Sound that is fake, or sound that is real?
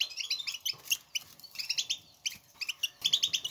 real